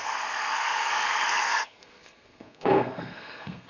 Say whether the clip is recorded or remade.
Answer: remade